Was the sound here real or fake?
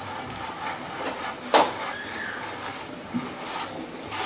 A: real